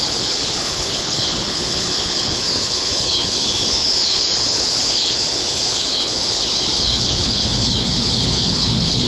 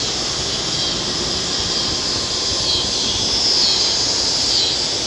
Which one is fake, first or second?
first